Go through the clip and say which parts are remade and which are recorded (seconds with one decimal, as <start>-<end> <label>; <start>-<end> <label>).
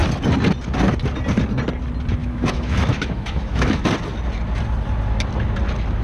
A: 0.0-2.2 recorded; 2.2-3.9 remade; 3.9-6.0 recorded